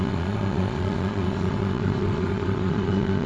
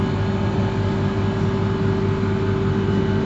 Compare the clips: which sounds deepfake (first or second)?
first